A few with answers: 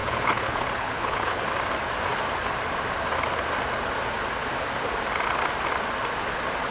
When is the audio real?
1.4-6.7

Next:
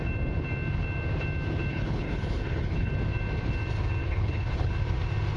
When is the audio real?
0.0-1.7; 2.9-4.0; 4.7-5.4

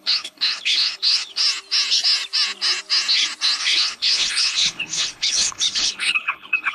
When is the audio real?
1.4-3.6

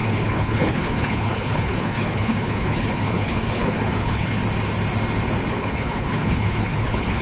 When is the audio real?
4.4-5.5

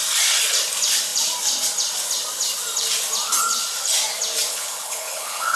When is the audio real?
0.0-4.5

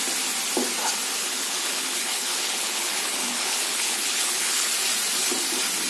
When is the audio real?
0.0-1.2; 4.7-5.9

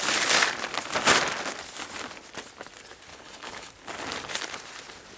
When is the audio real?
0.0-3.1; 3.7-5.2

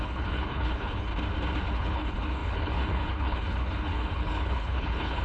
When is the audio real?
1.1-1.7